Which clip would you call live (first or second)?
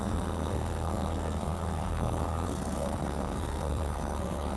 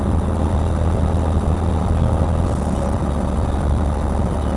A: second